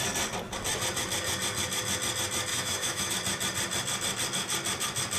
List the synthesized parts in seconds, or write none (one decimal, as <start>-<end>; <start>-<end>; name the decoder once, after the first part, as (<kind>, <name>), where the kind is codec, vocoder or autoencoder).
2.5-3.1 (autoencoder, DAC-VAE)